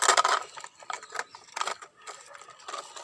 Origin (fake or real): real